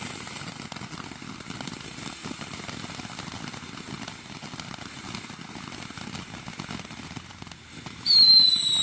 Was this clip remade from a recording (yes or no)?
no